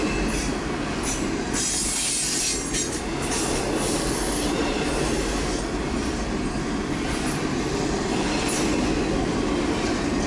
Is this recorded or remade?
recorded